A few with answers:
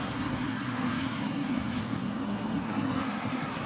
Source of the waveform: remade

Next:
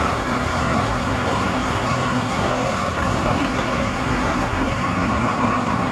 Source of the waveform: remade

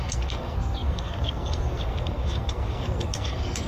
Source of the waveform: remade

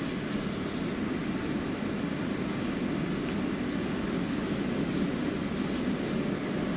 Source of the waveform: recorded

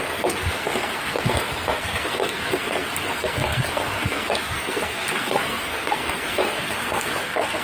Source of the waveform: remade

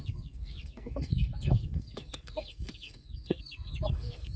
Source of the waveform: remade